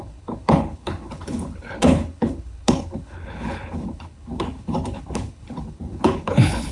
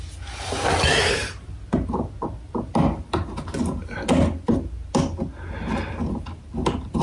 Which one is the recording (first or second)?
second